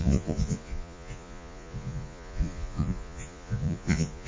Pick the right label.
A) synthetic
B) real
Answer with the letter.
A